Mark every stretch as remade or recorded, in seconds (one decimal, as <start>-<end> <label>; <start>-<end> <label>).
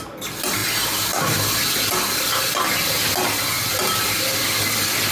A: 0.0-5.1 recorded